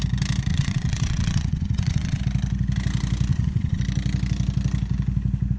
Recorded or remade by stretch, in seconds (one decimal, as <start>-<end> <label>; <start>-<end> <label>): 0.0-0.5 recorded; 0.5-2.2 remade; 2.2-3.3 recorded; 3.3-3.8 remade; 3.8-5.6 recorded